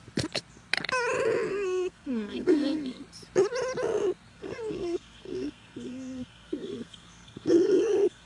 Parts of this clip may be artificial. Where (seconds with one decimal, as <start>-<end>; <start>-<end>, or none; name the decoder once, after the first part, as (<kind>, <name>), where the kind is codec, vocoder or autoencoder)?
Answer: 1.5-3.0 (codec, SNAC); 4.3-8.3

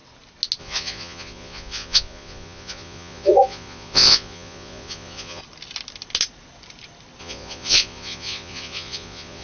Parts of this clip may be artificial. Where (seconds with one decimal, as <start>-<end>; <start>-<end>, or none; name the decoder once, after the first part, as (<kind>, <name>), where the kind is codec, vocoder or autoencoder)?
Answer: 0.6-5.4 (vocoder, Vocos); 7.2-9.4